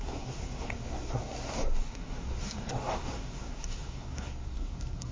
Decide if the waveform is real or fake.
fake